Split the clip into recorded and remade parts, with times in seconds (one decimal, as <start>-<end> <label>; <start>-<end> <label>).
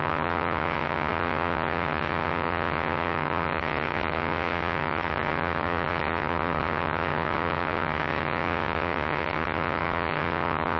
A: 0.0-10.8 remade